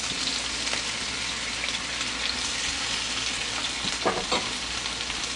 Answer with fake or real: real